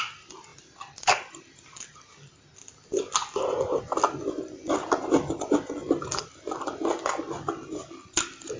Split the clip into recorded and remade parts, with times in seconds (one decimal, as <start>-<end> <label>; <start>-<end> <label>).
0.0-8.6 recorded